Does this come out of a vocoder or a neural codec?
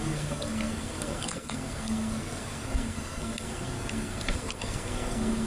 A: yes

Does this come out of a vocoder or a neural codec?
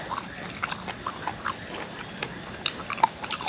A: no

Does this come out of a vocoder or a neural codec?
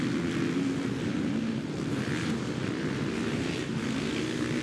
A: no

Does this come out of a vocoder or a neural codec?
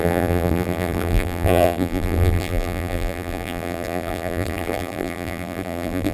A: yes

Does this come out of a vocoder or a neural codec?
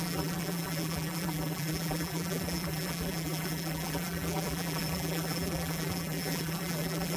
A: yes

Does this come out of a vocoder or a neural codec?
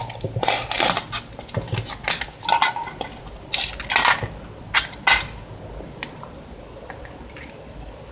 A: no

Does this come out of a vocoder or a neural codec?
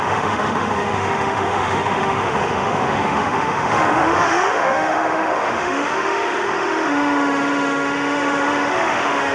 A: yes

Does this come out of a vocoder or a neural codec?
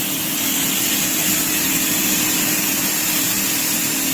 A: no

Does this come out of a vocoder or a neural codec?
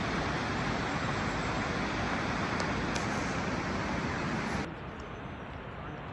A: no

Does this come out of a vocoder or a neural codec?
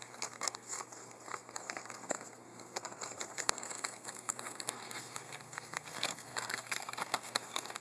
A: yes